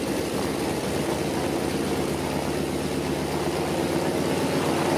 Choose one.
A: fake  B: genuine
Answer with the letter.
B